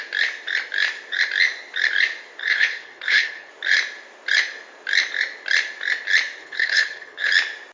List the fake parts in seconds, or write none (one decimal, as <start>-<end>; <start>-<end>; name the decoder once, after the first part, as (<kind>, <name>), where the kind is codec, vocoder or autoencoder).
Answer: 2.4-3.5 (codec, HILCodec); 6.4-7.3